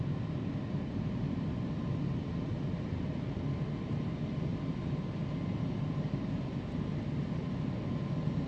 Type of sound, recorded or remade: recorded